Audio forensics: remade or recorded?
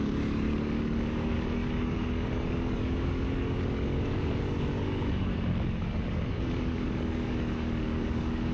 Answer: remade